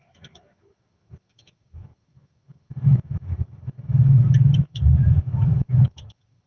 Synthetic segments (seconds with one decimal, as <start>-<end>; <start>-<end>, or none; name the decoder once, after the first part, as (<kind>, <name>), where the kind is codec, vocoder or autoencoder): 0.0-6.5 (autoencoder, DAC-VAE)